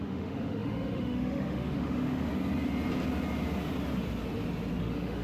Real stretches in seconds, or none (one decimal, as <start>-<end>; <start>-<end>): 2.3-4.8